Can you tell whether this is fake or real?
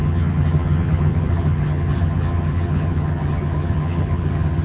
fake